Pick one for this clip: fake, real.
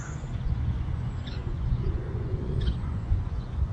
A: fake